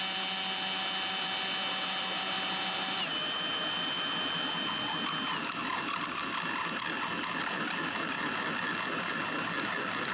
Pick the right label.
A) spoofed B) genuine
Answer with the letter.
B